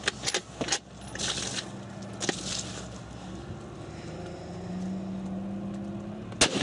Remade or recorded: recorded